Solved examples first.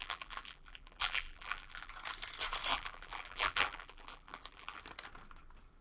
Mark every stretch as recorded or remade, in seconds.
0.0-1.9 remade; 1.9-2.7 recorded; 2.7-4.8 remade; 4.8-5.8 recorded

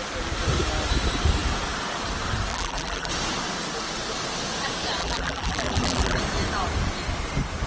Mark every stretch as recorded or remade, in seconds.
0.0-2.5 recorded; 2.5-3.1 remade; 3.1-5.0 recorded; 5.0-6.2 remade; 6.2-7.7 recorded

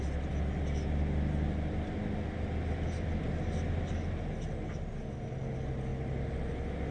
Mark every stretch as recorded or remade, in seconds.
0.0-6.9 recorded

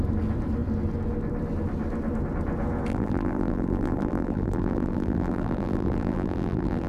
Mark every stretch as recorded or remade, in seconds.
0.0-2.9 recorded; 2.9-6.9 remade